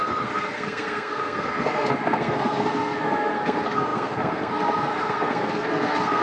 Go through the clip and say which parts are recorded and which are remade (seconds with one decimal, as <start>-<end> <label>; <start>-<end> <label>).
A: 0.0-6.2 remade